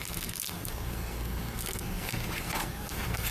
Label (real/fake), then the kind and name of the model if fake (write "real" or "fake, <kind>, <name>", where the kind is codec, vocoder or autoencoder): fake, codec, SNAC